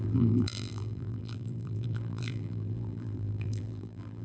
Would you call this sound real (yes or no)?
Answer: no